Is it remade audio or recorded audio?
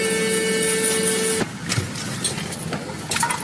recorded